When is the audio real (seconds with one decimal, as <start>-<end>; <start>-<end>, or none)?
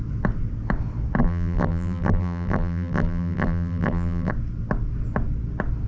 0.0-1.2; 4.3-5.9